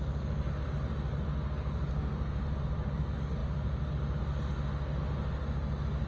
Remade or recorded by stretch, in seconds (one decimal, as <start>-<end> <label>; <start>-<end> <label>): 0.0-1.9 recorded; 1.9-2.4 remade; 2.4-6.1 recorded